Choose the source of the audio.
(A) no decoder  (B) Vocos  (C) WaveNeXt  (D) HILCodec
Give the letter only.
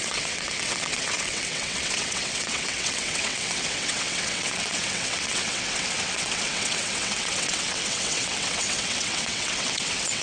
C